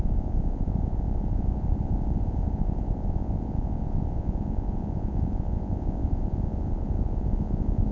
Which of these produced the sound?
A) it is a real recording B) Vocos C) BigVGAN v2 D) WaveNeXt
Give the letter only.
B